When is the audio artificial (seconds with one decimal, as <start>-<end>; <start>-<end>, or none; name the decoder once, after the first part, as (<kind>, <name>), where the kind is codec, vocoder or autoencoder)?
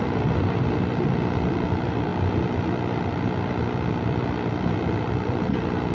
none